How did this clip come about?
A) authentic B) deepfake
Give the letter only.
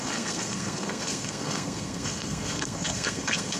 B